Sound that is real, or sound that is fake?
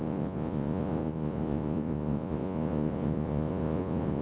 fake